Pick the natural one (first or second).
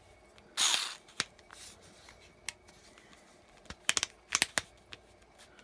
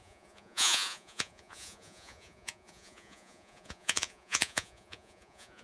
first